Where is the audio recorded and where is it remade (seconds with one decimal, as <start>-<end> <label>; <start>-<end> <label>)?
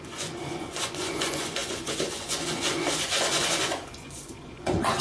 0.0-5.0 remade